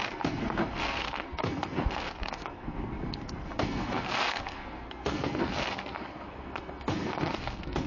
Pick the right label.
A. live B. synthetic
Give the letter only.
B